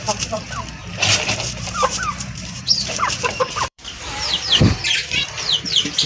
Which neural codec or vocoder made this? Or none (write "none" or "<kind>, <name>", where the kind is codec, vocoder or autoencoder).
vocoder, BigVGAN v2